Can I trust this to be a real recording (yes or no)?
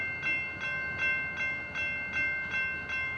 yes